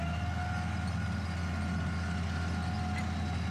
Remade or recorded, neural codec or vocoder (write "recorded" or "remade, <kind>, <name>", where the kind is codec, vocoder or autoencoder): recorded